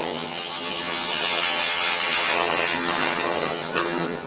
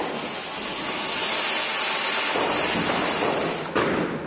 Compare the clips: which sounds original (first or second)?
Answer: second